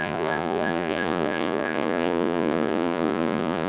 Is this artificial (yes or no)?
yes